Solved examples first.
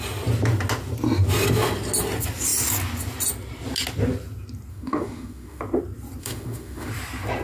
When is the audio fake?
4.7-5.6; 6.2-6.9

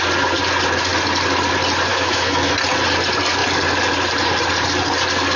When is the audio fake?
1.9-2.5

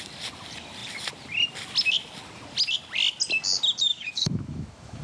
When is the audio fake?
3.9-5.0

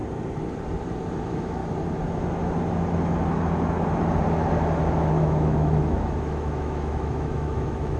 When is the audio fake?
1.2-1.6; 5.1-8.0

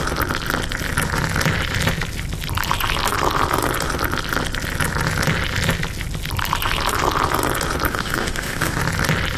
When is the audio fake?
7.9-8.8

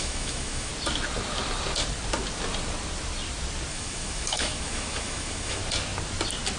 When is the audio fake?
0.0-0.7; 3.7-5.6

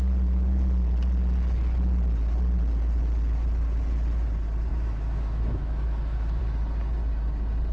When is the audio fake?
4.7-6.4